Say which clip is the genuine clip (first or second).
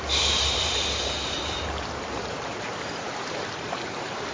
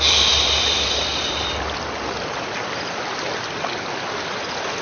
second